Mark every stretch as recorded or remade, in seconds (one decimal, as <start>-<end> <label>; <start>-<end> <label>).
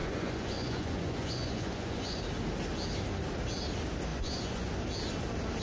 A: 0.0-2.2 remade; 2.2-4.1 recorded; 4.1-4.7 remade; 4.7-5.6 recorded